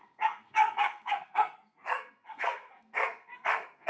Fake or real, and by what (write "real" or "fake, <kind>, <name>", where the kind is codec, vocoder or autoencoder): fake, codec, SNAC